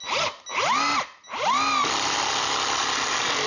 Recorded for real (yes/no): yes